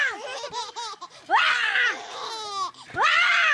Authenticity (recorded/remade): recorded